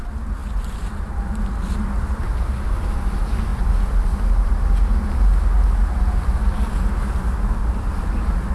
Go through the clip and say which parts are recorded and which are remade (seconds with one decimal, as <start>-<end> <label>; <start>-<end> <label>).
0.0-8.5 recorded